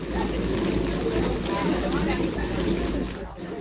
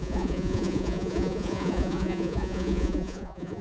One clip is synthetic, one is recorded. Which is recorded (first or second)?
first